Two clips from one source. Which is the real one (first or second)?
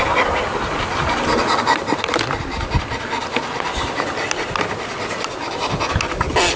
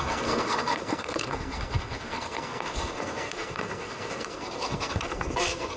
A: first